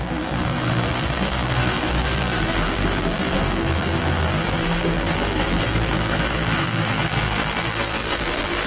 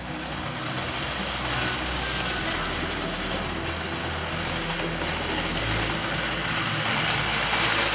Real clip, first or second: second